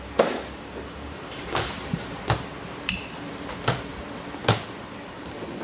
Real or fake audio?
real